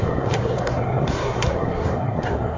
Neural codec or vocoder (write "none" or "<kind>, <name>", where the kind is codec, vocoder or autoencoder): codec, SNAC